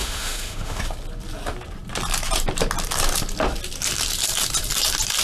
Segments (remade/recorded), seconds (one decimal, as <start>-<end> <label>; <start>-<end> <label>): 0.0-0.8 remade; 0.8-5.2 recorded